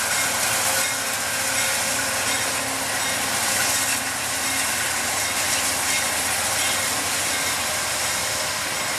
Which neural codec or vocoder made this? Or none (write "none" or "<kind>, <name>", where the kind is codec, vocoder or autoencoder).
none